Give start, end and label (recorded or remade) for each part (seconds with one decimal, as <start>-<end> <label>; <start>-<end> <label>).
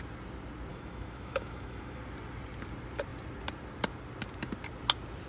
0.0-0.7 recorded; 0.7-2.0 remade; 2.0-5.3 recorded